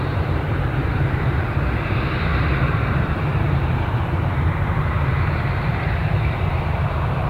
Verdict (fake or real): fake